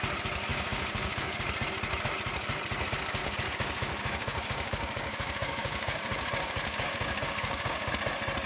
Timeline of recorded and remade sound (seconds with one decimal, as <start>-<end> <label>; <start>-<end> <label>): 0.0-0.5 recorded; 0.5-1.4 remade; 1.4-3.2 recorded; 3.2-7.9 remade; 7.9-8.5 recorded